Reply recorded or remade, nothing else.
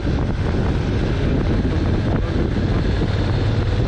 recorded